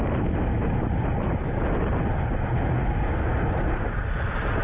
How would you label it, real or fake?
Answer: real